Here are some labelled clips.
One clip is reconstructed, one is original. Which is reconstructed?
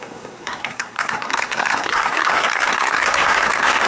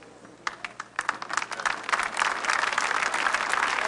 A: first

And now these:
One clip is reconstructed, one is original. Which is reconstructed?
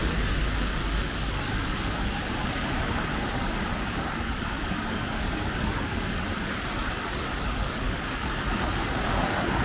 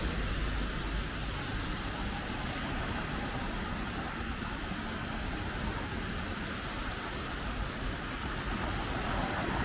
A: first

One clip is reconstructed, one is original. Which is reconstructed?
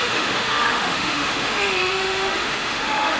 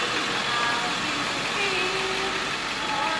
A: first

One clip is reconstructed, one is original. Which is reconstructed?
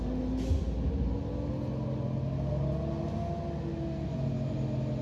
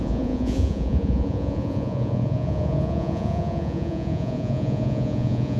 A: second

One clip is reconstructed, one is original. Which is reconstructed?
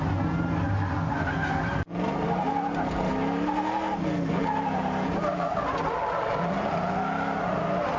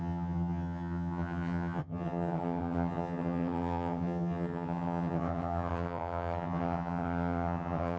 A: second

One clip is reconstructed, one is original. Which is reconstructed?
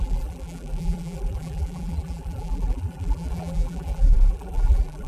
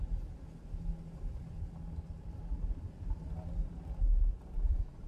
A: first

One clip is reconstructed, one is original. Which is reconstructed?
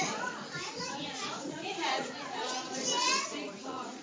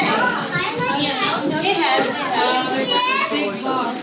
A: first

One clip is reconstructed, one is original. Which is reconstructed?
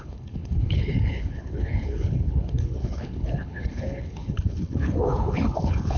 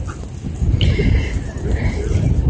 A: first